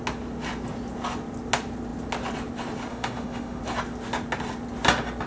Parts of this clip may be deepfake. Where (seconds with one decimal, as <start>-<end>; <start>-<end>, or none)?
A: 2.9-3.6